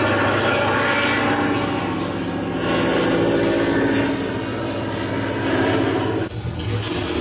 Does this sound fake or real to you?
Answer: real